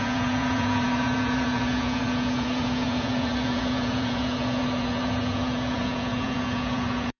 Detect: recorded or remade remade